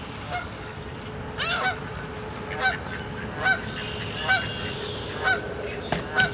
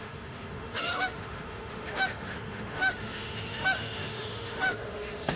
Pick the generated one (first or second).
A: second